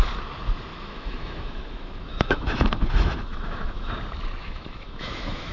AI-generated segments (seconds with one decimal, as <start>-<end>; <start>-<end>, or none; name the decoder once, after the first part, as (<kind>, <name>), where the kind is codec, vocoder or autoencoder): 0.7-3.9 (autoencoder, DAC-VAE); 4.4-5.5